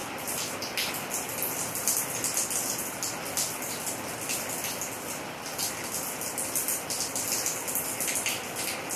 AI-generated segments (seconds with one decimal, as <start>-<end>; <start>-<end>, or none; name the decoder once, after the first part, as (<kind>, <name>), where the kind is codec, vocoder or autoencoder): none